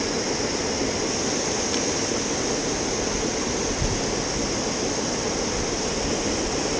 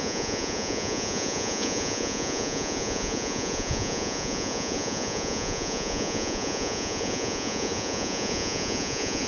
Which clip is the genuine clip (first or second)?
first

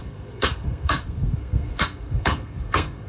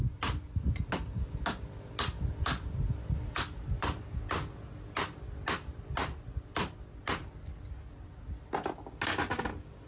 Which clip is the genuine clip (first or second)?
second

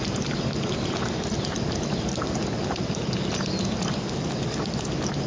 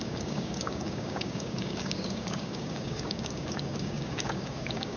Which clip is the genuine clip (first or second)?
first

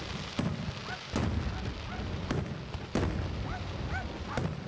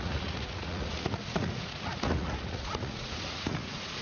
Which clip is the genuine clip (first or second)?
first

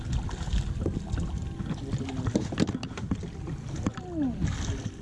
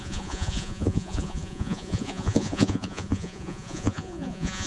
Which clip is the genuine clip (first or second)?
first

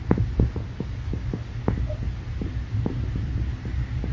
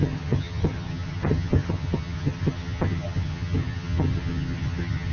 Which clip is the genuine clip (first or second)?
first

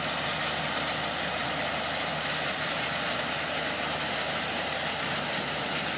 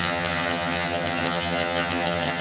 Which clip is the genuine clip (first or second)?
first